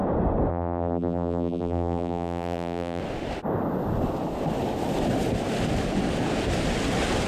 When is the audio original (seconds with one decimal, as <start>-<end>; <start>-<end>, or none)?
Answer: 0.0-0.5; 3.0-7.3